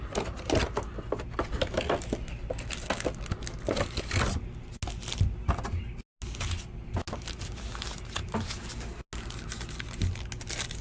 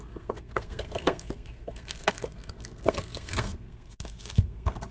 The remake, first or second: second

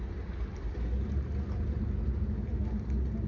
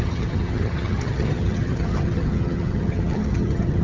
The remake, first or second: second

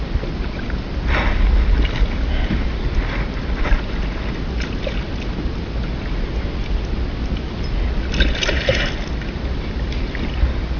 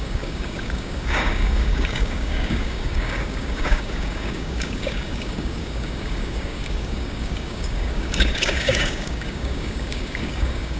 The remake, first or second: second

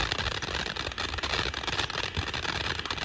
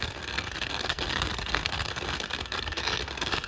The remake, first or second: second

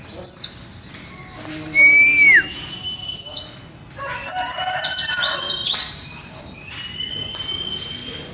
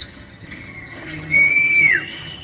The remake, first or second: second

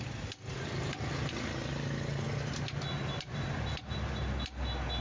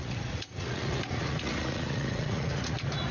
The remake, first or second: second